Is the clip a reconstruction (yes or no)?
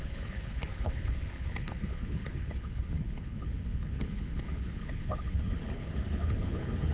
yes